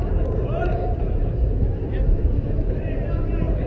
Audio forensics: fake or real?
fake